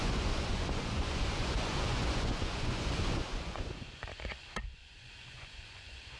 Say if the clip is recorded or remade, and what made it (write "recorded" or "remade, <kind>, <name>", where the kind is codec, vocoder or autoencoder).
remade, vocoder, Vocos